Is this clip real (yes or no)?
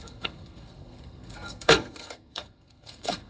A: no